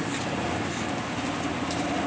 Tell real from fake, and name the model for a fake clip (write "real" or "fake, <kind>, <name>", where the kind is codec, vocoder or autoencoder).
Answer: real